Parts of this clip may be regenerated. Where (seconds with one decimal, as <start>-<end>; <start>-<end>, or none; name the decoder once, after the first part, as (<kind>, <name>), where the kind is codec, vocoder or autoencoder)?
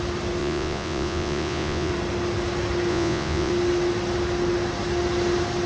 0.4-1.9 (vocoder, Vocos); 2.9-3.5